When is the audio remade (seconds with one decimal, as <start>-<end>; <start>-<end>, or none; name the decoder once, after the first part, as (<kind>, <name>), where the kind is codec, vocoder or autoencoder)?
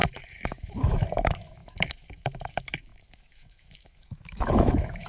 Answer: 0.0-5.1 (autoencoder, DAC-VAE)